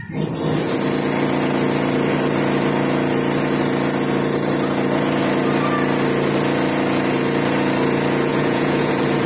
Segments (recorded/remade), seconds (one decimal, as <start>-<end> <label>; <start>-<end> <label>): 0.0-8.3 recorded; 8.3-8.9 remade; 8.9-9.3 recorded